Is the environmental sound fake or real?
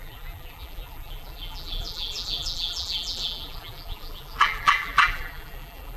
fake